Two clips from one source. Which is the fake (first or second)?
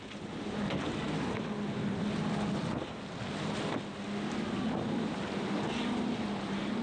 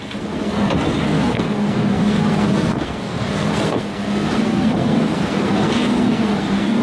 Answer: second